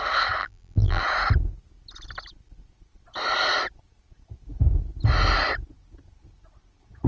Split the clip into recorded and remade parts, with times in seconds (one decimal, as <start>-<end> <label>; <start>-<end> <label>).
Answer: 0.0-0.4 recorded; 0.4-1.0 remade; 1.0-7.1 recorded